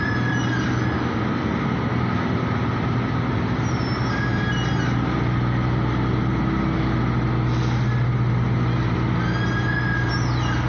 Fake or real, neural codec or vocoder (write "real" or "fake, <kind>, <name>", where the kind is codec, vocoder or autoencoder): real